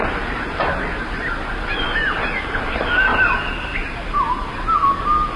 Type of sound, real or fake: real